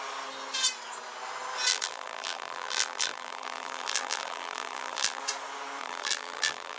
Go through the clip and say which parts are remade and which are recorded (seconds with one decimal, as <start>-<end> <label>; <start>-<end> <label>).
0.0-1.7 recorded; 1.7-5.2 remade; 5.2-5.8 recorded; 5.8-6.8 remade